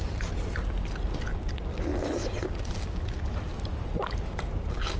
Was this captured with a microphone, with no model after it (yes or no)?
yes